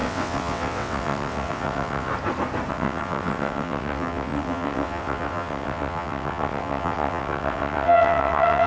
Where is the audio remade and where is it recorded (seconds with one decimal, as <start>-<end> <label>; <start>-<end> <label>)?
0.0-2.1 remade; 2.1-2.7 recorded; 2.7-8.7 remade